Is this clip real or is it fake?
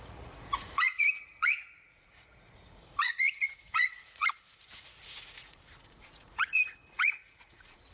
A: fake